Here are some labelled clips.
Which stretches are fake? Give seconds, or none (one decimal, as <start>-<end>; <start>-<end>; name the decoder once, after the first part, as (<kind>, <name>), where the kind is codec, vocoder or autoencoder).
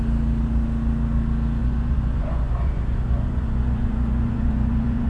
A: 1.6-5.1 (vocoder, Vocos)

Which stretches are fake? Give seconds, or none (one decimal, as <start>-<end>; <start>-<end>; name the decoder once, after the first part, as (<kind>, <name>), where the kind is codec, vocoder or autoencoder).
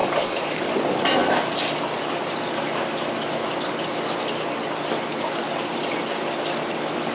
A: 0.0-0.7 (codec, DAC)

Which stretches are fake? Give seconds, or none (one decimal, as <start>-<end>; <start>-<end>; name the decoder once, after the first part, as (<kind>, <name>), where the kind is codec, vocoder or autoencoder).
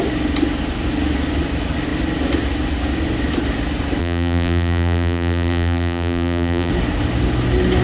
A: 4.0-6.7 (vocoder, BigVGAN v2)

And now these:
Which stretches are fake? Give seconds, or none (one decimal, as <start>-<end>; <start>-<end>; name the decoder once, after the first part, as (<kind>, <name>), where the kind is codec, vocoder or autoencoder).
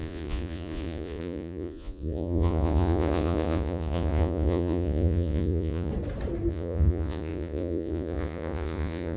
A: 0.0-5.9 (vocoder, Vocos); 6.5-9.2